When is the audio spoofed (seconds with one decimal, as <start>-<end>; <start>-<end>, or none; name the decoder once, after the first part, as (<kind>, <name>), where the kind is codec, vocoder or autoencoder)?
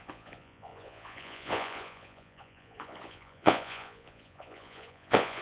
0.0-5.4 (vocoder, Vocos)